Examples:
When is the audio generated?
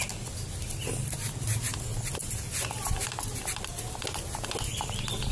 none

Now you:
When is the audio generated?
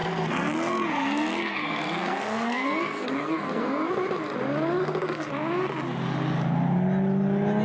0.0-3.9 (codec, SNAC); 4.8-5.3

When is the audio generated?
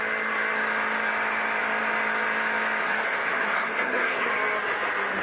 2.8-4.3 (codec, SNAC)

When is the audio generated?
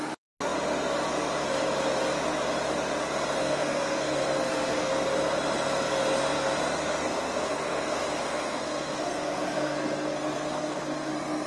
3.4-4.9 (codec, SNAC); 7.0-11.1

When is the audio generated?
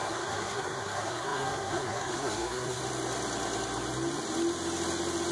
0.0-2.8 (codec, SNAC)